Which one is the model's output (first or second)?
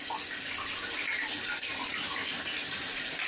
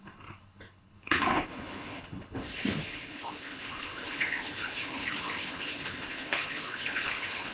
second